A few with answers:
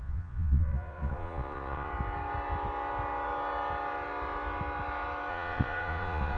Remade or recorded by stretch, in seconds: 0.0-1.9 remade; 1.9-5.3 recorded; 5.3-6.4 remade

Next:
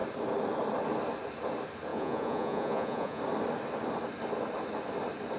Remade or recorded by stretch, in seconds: 0.0-1.9 recorded; 1.9-3.2 remade; 3.2-5.4 recorded

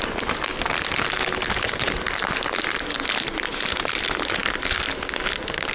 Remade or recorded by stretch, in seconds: 0.0-5.7 recorded